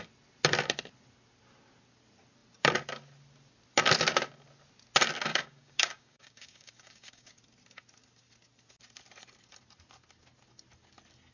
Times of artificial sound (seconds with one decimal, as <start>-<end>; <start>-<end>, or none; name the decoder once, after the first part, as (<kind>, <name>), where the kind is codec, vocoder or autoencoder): 5.3-7.4 (codec, DAC)